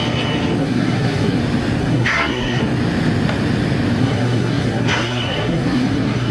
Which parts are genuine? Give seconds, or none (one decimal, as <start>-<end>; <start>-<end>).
0.0-0.6; 1.4-1.8; 2.6-4.0